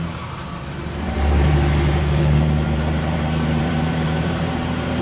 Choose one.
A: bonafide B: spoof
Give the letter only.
B